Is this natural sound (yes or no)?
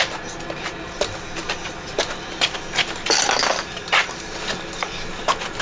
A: yes